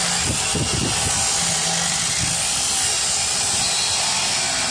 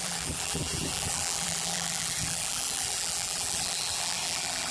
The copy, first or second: second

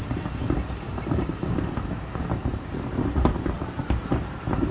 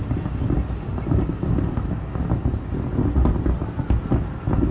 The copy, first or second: first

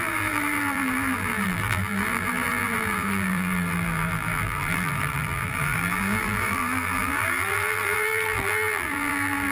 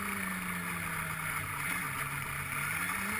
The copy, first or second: first